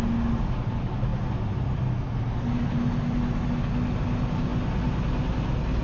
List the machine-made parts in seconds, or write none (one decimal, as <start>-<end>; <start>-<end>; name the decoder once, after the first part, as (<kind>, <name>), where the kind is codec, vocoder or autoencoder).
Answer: none